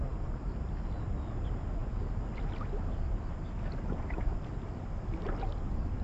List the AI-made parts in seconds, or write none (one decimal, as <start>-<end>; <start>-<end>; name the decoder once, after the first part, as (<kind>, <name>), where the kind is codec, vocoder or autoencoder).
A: none